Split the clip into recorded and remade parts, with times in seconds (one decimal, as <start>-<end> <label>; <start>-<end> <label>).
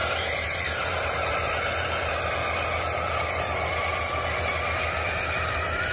0.0-2.1 remade; 2.1-5.9 recorded